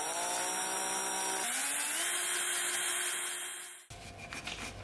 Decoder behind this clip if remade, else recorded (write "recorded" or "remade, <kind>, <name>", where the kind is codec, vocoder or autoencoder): recorded